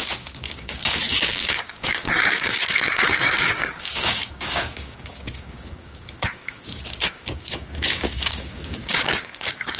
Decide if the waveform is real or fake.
fake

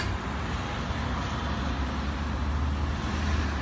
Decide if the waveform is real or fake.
real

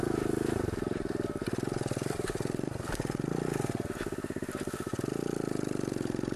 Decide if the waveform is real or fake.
real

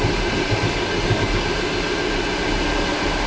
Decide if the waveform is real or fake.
real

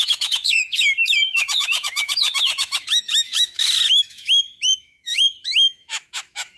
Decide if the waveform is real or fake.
fake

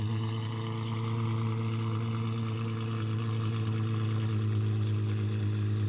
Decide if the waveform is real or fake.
real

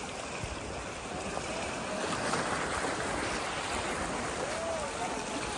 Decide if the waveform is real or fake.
real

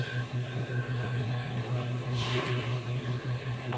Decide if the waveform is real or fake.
fake